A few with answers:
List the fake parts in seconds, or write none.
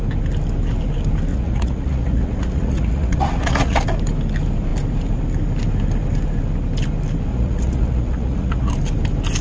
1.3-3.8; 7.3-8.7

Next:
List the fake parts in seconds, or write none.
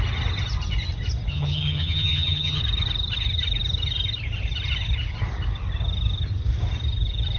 1.3-2.6